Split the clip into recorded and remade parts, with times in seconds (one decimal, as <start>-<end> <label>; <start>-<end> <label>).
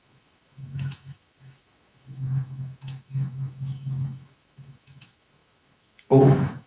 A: 0.0-6.7 remade